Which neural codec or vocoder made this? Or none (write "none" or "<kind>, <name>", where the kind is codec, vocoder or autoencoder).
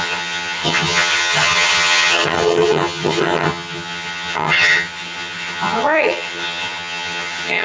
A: vocoder, HiFi-GAN